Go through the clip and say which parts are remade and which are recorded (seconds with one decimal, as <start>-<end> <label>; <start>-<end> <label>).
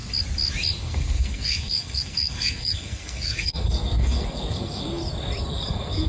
0.0-0.8 recorded; 0.8-5.0 remade; 5.0-5.5 recorded; 5.5-6.1 remade